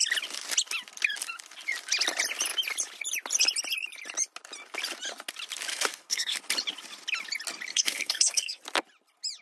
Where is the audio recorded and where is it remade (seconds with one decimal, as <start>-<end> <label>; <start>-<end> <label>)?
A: 0.0-5.7 recorded; 5.7-6.4 remade; 6.4-7.7 recorded; 7.7-8.6 remade; 8.6-9.4 recorded